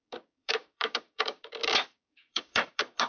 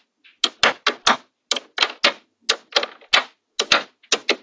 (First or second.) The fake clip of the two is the first